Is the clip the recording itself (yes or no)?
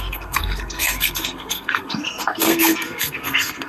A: no